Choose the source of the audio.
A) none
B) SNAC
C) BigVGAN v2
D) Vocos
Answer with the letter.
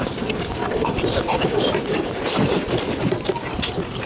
C